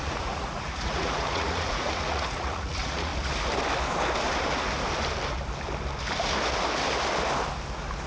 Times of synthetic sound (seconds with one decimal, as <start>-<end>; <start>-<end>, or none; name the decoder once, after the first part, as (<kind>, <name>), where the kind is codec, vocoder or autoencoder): 0.0-3.1 (vocoder, Vocos)